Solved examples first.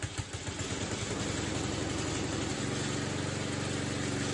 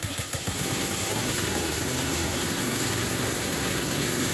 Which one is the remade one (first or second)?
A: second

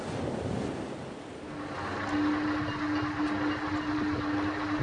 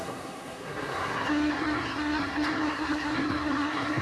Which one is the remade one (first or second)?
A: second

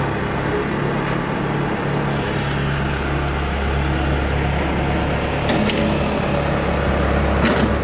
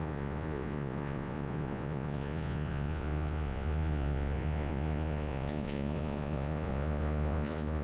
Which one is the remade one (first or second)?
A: second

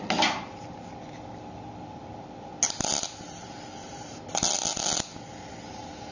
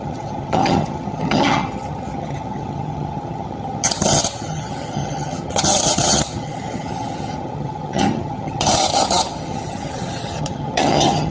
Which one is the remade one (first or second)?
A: second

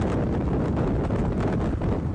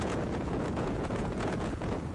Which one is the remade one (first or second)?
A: second